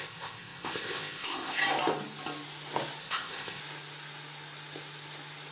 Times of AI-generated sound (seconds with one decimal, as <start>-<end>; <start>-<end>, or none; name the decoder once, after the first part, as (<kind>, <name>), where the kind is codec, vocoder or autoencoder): 0.0-1.6 (codec, ZipCodec); 3.0-3.6